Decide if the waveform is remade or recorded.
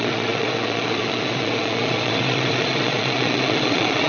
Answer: remade